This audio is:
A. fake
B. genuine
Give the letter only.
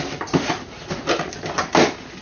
B